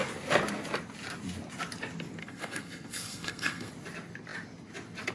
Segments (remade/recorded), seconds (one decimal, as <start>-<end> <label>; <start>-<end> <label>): 0.0-2.2 recorded; 2.2-3.7 remade; 3.7-5.1 recorded

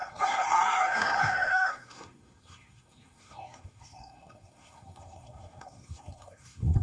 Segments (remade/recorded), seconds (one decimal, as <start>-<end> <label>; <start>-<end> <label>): 0.0-6.8 remade